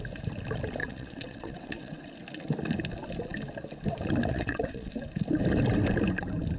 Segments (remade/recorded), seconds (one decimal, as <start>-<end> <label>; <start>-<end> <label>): 0.0-0.8 recorded; 0.8-2.1 remade; 2.1-4.3 recorded; 4.3-4.9 remade; 4.9-6.6 recorded